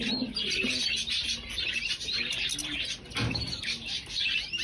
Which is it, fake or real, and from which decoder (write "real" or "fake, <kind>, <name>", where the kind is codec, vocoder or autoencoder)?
real